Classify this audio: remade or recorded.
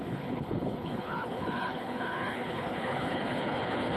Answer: remade